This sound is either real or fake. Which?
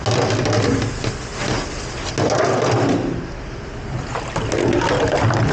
real